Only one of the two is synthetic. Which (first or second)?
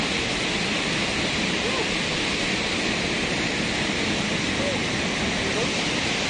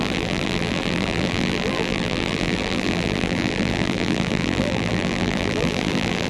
second